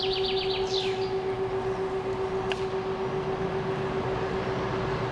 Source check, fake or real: real